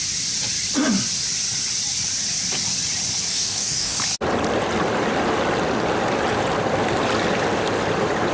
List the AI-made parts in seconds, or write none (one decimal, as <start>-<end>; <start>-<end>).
3.3-4.0